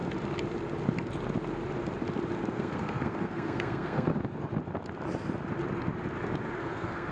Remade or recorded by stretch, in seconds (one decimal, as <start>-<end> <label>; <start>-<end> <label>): 0.0-2.5 recorded; 2.5-4.1 remade; 4.1-6.6 recorded; 6.6-7.1 remade